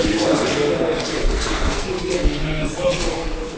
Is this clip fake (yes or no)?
yes